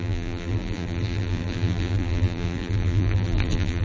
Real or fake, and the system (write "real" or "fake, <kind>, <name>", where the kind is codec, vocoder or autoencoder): fake, vocoder, BigVGAN v2